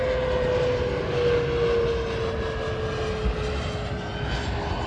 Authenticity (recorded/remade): recorded